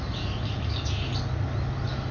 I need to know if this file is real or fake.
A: real